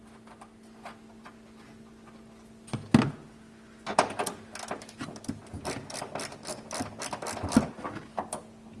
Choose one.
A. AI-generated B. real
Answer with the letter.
B